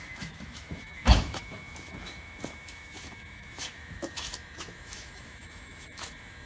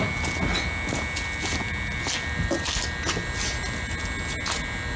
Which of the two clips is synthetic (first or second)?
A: first